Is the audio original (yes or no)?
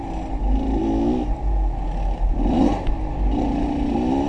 yes